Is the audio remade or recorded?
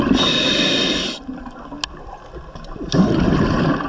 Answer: recorded